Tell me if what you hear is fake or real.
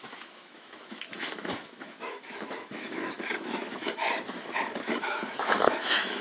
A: fake